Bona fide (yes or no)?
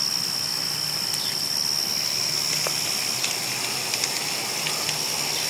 yes